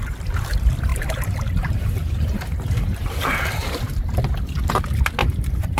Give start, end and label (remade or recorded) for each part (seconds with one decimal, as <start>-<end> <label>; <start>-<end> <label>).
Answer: 0.0-0.9 recorded; 0.9-3.8 remade; 3.8-5.2 recorded; 5.2-5.8 remade